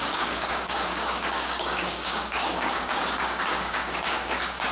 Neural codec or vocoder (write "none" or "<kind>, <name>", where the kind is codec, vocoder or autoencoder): codec, DAC